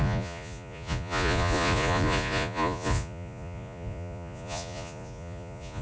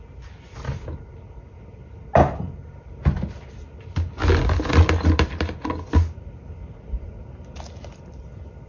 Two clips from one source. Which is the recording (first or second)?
second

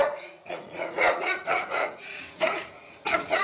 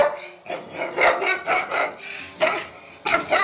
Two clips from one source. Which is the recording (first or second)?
second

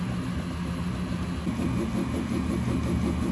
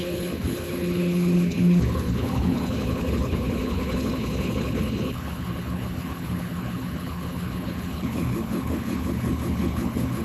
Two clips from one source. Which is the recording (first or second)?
first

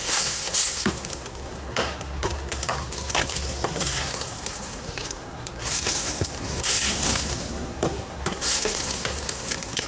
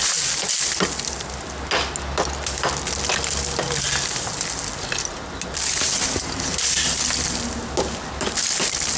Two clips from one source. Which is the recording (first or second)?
second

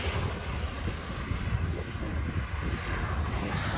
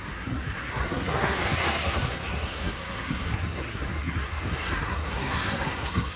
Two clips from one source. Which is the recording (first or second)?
first